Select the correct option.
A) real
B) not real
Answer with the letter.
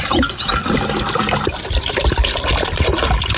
A